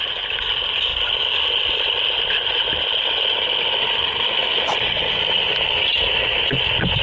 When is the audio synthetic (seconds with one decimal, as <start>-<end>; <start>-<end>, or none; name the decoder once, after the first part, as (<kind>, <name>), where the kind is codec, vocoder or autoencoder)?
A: none